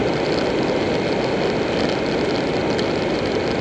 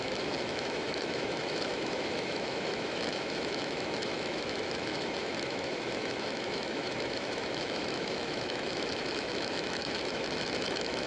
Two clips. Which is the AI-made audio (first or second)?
second